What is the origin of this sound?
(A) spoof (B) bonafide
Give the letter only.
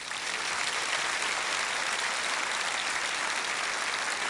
B